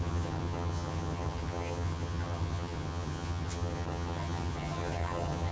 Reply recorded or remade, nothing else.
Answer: remade